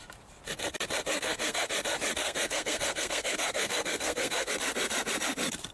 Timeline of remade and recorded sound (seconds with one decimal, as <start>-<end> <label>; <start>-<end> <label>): 0.0-1.1 recorded; 1.1-1.7 remade; 1.7-2.2 recorded; 2.2-4.5 remade; 4.5-5.7 recorded